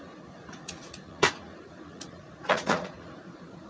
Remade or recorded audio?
remade